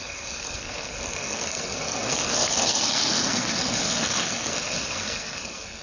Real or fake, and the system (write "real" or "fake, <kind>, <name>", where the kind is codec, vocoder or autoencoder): fake, codec, SNAC